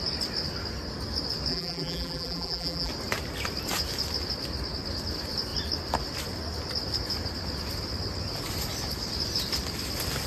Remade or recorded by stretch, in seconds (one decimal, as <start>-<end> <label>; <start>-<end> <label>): 0.0-1.5 recorded; 1.5-2.9 remade; 2.9-10.3 recorded